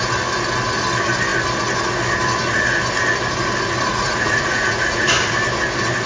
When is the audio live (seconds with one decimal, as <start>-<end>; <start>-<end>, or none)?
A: 0.0-3.9; 5.1-6.1